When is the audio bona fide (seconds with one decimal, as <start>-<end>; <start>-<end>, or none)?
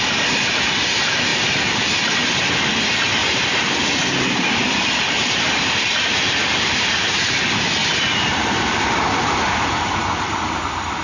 0.0-3.2; 7.2-7.8; 10.6-11.0